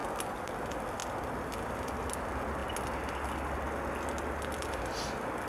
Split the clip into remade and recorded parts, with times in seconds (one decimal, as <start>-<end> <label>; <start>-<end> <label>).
0.0-0.5 remade; 0.5-5.5 recorded